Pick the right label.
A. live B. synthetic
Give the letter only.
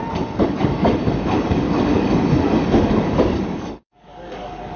B